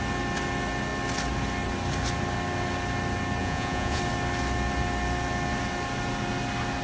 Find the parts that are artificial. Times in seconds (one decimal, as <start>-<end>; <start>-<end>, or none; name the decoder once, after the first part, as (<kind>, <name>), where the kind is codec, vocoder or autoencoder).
3.4-4.0 (vocoder, Vocos)